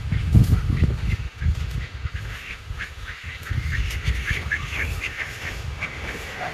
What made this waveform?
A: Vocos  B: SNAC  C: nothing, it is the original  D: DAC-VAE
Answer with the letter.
D